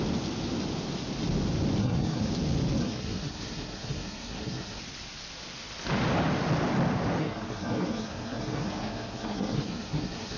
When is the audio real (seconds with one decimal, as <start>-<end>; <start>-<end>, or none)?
0.0-1.8; 2.3-2.8; 4.8-7.2